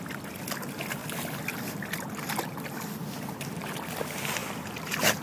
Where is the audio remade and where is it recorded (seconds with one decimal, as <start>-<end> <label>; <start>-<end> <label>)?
0.0-5.2 recorded

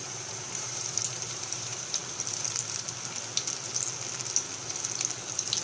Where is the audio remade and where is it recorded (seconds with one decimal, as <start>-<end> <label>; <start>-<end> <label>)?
0.0-2.0 remade; 2.0-5.6 recorded

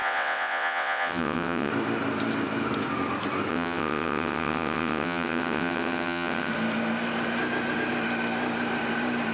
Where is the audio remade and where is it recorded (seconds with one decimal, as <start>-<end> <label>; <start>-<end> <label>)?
0.0-1.7 remade; 1.7-3.5 recorded; 3.5-6.5 remade; 6.5-9.3 recorded